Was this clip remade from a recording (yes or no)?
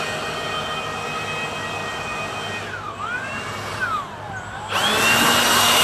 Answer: no